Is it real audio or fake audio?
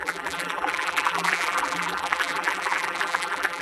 fake